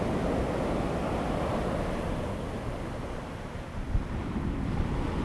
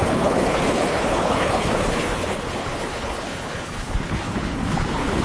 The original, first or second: first